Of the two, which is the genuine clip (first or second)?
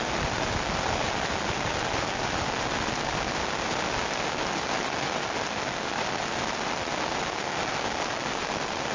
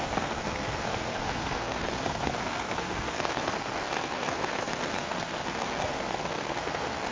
first